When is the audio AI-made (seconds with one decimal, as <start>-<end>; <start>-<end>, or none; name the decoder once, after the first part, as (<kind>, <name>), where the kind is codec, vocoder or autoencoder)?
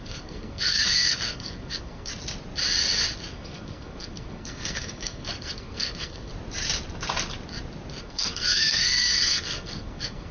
0.0-2.1 (codec, SNAC); 3.3-6.3; 8.0-10.3